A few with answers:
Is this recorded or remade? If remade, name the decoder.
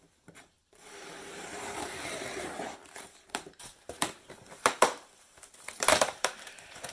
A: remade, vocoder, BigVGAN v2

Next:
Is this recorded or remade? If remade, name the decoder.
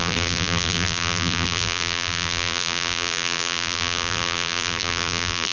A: remade, vocoder, BigVGAN v2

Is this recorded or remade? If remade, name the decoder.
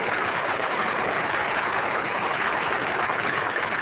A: remade, codec, HILCodec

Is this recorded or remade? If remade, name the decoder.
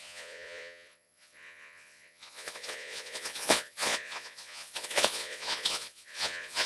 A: remade, vocoder, Vocos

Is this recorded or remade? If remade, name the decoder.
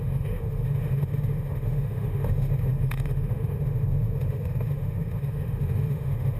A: remade, autoencoder, DAC-VAE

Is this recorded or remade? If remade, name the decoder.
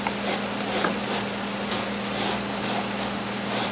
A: recorded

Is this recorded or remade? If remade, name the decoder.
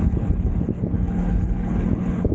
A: remade, codec, HILCodec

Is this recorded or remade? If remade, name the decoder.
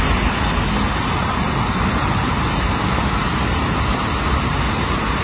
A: recorded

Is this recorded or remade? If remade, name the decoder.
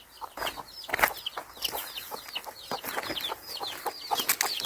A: recorded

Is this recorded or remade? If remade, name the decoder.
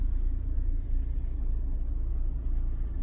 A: recorded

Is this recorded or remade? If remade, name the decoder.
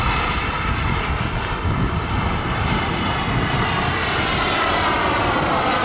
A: recorded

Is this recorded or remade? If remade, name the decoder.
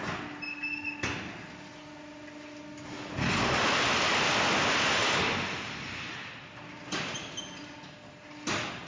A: recorded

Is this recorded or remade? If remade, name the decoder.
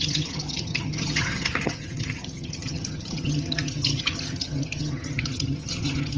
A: remade, vocoder, HiFi-GAN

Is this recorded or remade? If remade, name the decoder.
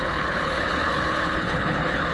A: remade, codec, HILCodec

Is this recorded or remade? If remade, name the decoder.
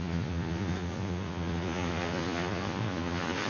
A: remade, vocoder, Vocos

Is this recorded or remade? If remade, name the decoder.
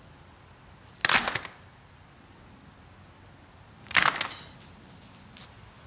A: recorded